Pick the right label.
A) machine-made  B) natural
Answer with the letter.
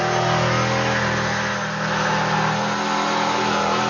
B